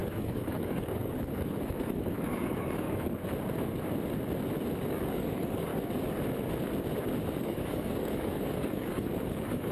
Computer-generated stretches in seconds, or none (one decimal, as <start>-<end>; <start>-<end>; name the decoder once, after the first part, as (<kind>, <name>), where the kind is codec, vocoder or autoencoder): 0.0-3.2 (codec, DAC); 4.9-5.7; 7.4-9.7